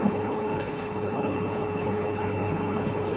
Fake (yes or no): yes